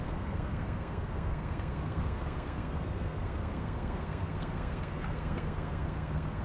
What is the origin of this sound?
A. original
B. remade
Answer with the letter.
B